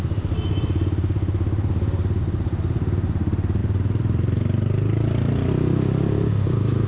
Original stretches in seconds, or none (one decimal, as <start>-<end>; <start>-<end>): 0.0-3.6; 5.5-6.9